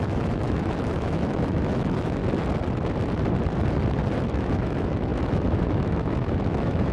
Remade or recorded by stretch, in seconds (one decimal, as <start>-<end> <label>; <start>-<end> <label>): 0.0-2.2 remade; 2.2-4.2 recorded; 4.2-6.9 remade